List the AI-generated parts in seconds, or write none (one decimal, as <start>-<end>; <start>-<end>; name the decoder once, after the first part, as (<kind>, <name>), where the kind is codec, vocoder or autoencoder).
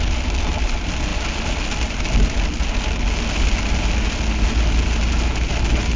none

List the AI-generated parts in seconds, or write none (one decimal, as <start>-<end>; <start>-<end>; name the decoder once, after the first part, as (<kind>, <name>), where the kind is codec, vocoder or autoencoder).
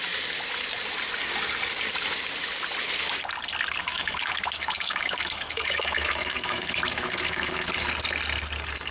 3.8-7.7 (autoencoder, DAC-VAE)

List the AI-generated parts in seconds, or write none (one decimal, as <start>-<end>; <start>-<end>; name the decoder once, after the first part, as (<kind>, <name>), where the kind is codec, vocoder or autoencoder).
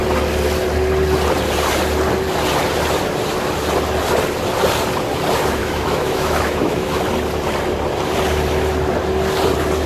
5.6-7.0 (autoencoder, DAC-VAE)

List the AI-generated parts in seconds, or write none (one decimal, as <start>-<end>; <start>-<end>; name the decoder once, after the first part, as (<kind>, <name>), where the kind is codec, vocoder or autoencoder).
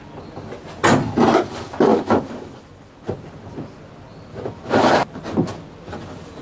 1.9-3.1 (autoencoder, DAC-VAE); 4.3-4.9